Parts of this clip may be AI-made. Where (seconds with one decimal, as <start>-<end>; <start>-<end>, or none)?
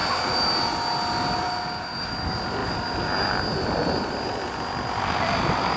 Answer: none